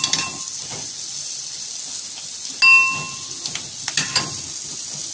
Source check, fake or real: real